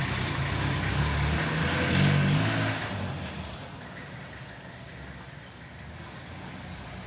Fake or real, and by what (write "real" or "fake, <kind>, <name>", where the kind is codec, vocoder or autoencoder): real